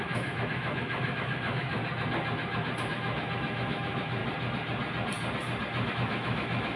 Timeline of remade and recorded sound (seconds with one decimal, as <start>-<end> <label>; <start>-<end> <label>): 0.0-1.8 remade; 1.8-2.8 recorded; 2.8-4.2 remade; 4.2-5.9 recorded; 5.9-6.8 remade